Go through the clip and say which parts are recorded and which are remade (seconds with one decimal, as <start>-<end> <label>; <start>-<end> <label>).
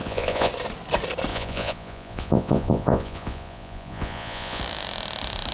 0.0-0.5 remade; 0.5-1.3 recorded; 1.3-4.6 remade; 4.6-5.5 recorded